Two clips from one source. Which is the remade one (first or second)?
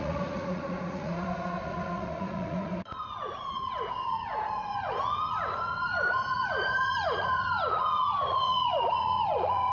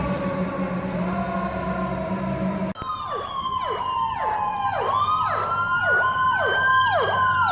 first